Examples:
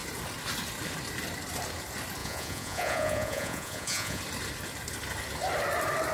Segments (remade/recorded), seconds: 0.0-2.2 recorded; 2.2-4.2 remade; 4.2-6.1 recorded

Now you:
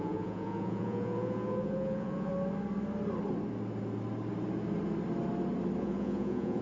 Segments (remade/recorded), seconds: 0.0-2.3 remade; 2.3-5.8 recorded; 5.8-6.6 remade

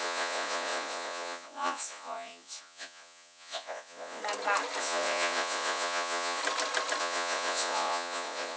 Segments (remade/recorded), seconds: 0.0-4.2 remade; 4.2-4.8 recorded; 4.8-6.4 remade; 6.4-7.0 recorded; 7.0-8.6 remade

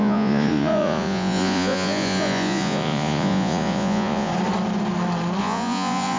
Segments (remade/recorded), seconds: 0.0-4.3 remade; 4.3-5.4 recorded; 5.4-6.2 remade

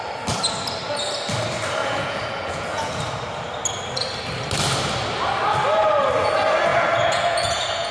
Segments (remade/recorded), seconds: 0.0-1.8 recorded; 1.8-3.0 remade; 3.0-6.7 recorded; 6.7-7.9 remade

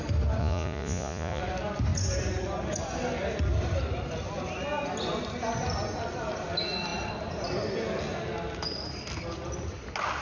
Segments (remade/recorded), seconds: 0.0-0.4 recorded; 0.4-1.4 remade; 1.4-10.2 recorded

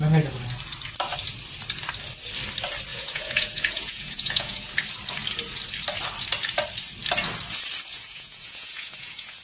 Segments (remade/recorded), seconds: 0.0-2.9 recorded; 2.9-4.6 remade; 4.6-7.9 recorded; 7.9-9.4 remade